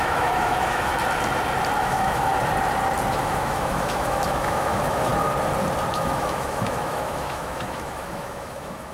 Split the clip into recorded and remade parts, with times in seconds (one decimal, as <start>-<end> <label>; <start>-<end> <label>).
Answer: 0.0-0.9 remade; 0.9-1.8 recorded; 1.8-2.3 remade; 2.3-3.1 recorded; 3.1-5.1 remade; 5.1-5.9 recorded; 5.9-8.9 remade